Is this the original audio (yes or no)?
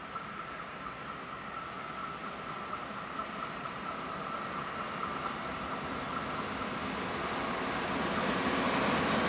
yes